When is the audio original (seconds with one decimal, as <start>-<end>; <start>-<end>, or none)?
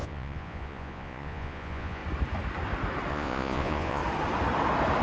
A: 2.0-3.1; 4.0-5.0